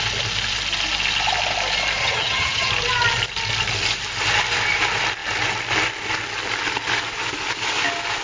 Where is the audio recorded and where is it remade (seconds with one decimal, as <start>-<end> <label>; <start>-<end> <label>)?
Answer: 0.0-2.0 recorded; 2.0-2.7 remade; 2.7-8.2 recorded